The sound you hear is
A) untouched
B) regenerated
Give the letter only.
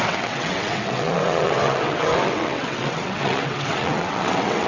B